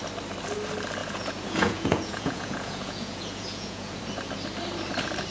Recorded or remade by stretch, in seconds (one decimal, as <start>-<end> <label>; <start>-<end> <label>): 0.0-1.0 recorded; 1.0-4.0 remade; 4.0-5.3 recorded